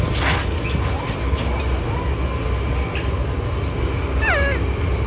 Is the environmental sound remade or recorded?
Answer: recorded